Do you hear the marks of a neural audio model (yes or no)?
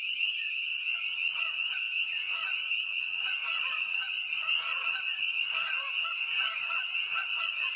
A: yes